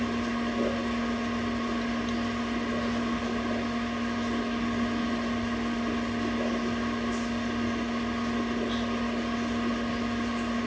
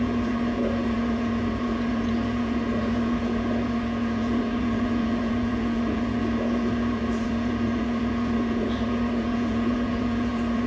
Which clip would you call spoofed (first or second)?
second